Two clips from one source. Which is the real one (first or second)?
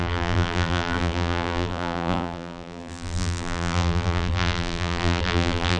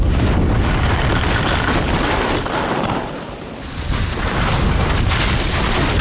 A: second